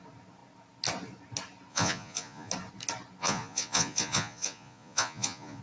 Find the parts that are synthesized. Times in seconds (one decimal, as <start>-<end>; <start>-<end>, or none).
1.7-2.5; 3.2-5.6